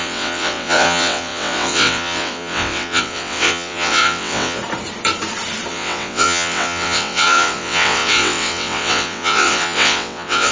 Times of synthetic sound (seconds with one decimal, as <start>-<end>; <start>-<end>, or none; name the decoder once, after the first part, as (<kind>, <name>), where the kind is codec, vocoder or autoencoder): 0.0-4.6 (vocoder, WaveNeXt); 5.7-10.5